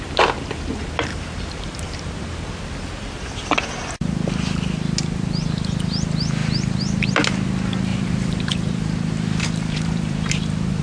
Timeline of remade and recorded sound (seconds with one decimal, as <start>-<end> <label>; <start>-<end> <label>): 0.0-1.1 recorded; 1.1-2.1 remade; 2.1-7.9 recorded; 7.9-10.3 remade; 10.3-10.8 recorded